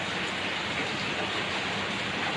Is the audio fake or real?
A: real